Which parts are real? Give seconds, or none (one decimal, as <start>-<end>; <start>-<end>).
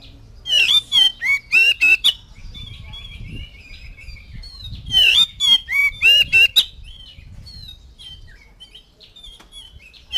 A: 5.8-8.1